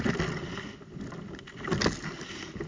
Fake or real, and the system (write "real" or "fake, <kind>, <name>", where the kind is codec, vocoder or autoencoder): real